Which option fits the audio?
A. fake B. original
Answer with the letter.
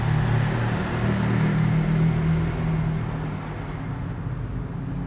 B